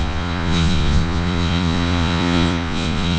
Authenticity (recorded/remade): remade